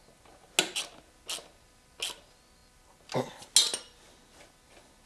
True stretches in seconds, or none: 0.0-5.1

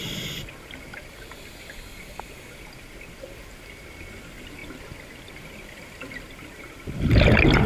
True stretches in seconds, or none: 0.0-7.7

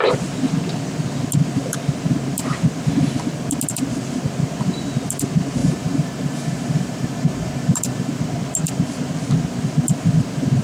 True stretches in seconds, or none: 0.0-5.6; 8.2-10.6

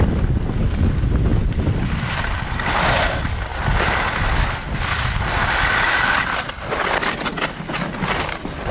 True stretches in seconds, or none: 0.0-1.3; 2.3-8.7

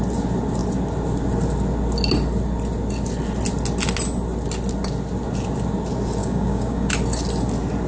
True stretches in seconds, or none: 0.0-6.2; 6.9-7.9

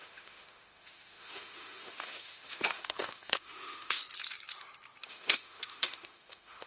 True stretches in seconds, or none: 4.0-5.1

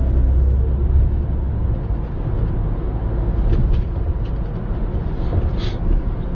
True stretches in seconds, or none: 0.0-6.3

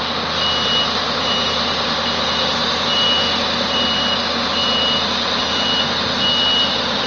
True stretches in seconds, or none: 0.0-7.1